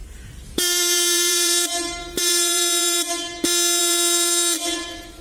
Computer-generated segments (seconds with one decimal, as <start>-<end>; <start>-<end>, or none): 0.0-3.1; 3.8-5.2